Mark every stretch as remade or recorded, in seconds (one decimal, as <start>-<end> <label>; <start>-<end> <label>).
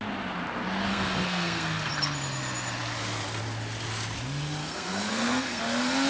0.0-0.9 recorded; 0.9-1.9 remade; 1.9-4.6 recorded; 4.6-5.6 remade; 5.6-6.1 recorded